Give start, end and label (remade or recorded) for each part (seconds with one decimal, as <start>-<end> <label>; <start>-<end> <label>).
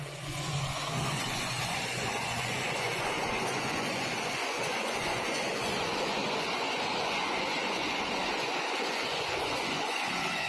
0.0-10.5 remade